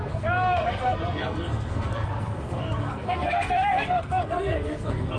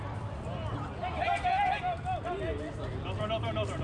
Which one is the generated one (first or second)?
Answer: first